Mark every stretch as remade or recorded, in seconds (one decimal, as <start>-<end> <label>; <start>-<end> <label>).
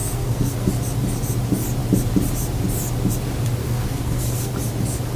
0.0-0.7 remade; 0.7-3.6 recorded; 3.6-4.5 remade; 4.5-5.2 recorded